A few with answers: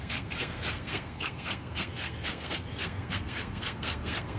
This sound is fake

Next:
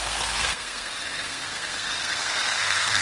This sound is fake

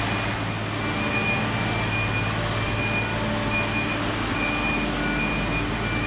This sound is real